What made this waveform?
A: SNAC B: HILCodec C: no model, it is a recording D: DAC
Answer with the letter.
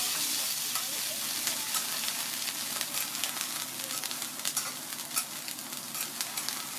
C